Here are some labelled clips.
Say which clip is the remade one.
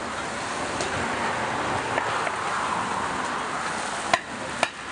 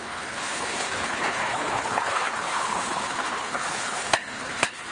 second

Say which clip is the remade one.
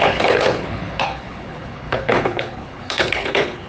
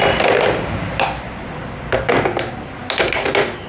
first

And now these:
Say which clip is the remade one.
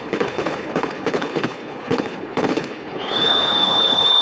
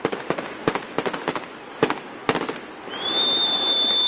first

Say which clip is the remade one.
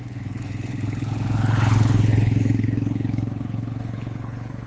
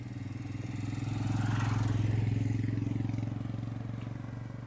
first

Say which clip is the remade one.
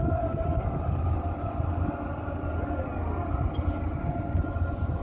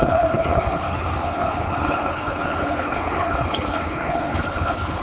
second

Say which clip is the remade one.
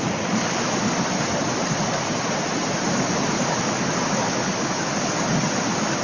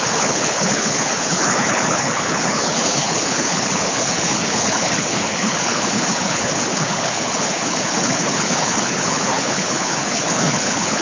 second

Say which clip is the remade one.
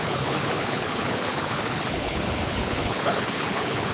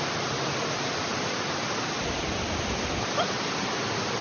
first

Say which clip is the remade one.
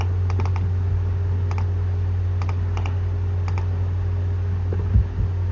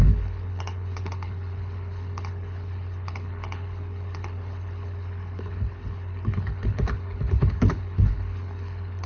second